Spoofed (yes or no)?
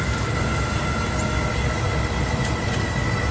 no